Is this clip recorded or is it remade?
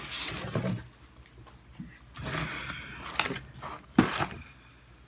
recorded